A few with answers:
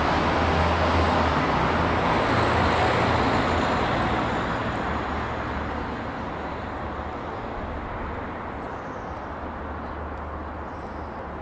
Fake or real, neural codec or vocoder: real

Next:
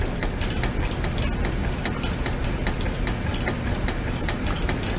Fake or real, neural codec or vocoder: real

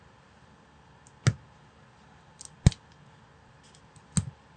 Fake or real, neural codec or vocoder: real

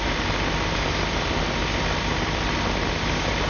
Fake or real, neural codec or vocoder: real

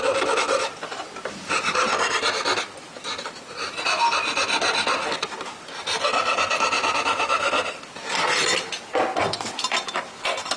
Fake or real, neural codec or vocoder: real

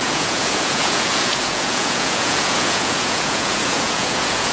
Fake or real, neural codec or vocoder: fake, vocoder, Vocos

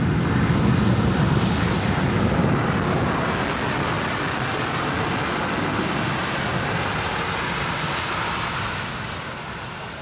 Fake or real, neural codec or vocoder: real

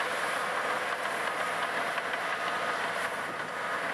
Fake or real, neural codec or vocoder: real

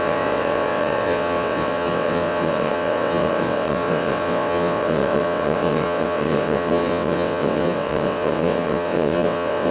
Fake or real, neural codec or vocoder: fake, vocoder, WaveNeXt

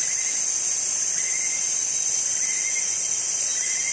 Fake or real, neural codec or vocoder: real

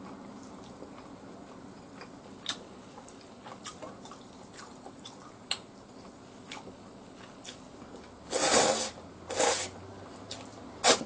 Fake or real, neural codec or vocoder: real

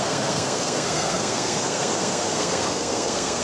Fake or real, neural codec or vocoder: fake, codec, SNAC